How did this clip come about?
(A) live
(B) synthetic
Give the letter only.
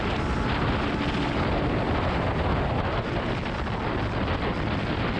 A